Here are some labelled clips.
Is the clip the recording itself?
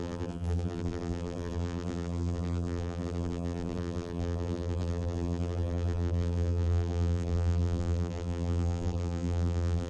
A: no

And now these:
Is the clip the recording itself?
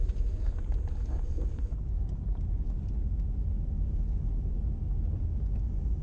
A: yes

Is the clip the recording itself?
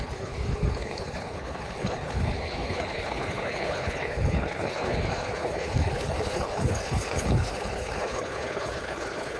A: no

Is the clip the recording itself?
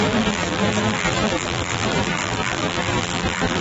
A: no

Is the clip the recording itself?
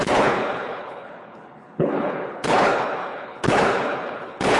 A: no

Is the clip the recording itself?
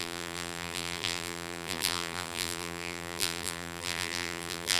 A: no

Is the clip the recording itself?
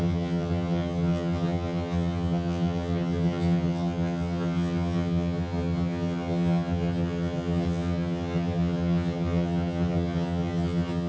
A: no